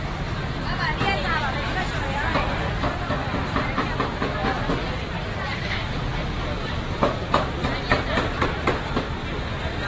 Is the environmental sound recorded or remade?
remade